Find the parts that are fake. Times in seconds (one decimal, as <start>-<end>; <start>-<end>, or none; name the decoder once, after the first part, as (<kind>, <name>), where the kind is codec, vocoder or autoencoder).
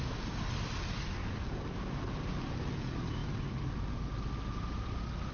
none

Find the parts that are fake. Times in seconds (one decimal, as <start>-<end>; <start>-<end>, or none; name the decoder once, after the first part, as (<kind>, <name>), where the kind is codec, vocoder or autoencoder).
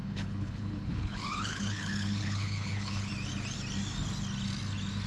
0.0-3.1 (codec, HILCodec)